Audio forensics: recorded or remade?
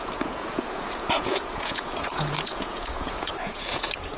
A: remade